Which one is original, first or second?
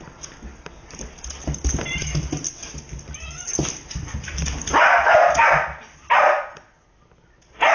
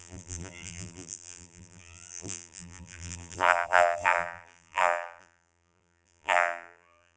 first